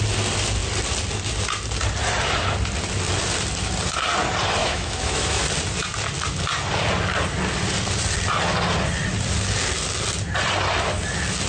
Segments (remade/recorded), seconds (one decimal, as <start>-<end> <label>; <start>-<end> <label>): 0.0-4.6 recorded; 4.6-5.4 remade; 5.4-11.5 recorded